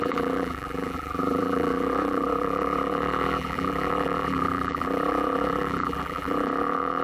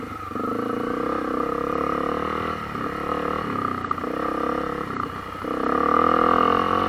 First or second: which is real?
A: second